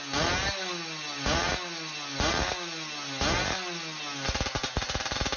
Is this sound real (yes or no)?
yes